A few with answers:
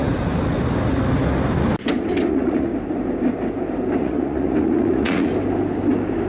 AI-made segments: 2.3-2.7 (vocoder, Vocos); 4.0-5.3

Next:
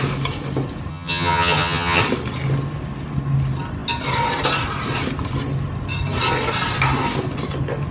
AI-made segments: 0.9-2.0 (vocoder, HiFi-GAN)

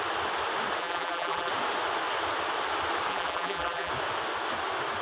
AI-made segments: 0.8-1.5 (vocoder, BigVGAN v2); 3.1-3.9

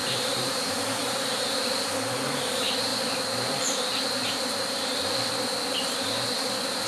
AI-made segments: 0.0-1.6 (vocoder, BigVGAN v2); 2.9-5.3

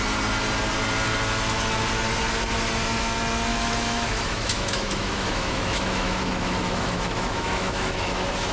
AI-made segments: 3.5-8.5 (autoencoder, DAC-VAE)

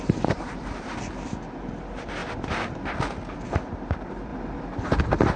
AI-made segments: none

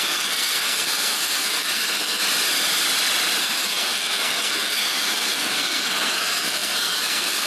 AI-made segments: 0.0-2.2 (codec, SNAC); 3.4-7.5

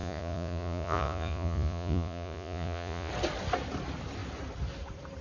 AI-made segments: 0.0-3.1 (vocoder, Vocos)